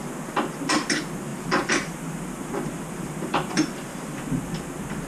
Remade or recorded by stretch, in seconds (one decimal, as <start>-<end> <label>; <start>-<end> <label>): 0.0-1.3 recorded; 1.3-4.4 remade; 4.4-5.1 recorded